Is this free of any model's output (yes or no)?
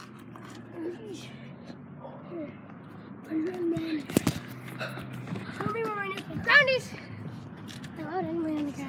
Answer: yes